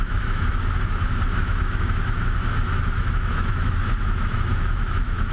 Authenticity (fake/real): fake